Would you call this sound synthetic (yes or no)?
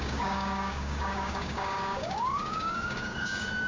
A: yes